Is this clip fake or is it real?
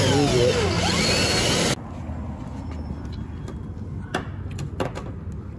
real